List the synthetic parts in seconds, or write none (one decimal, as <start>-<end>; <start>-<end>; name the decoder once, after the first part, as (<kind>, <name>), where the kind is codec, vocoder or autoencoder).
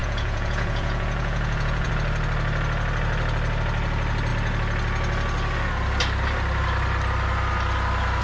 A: 0.0-1.9 (vocoder, Vocos)